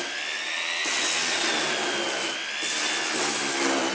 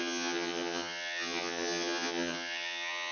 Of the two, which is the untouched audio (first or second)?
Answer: first